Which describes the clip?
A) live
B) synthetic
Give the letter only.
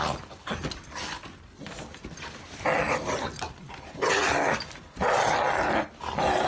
A